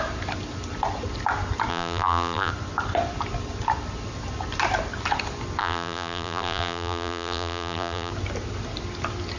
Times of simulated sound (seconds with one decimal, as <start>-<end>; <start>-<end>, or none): 1.7-2.5; 5.6-8.1